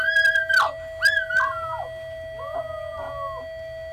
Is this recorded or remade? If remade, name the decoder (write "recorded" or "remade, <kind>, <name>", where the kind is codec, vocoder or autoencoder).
recorded